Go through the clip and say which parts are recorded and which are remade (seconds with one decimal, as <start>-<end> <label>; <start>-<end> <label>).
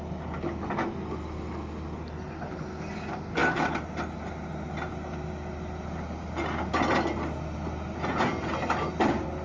0.0-9.4 recorded